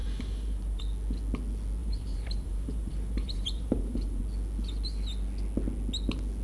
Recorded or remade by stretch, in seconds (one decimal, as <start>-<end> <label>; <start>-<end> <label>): 0.0-0.8 remade; 0.8-1.8 recorded; 1.8-4.2 remade; 4.2-6.4 recorded